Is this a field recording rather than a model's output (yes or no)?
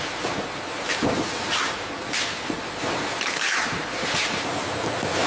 yes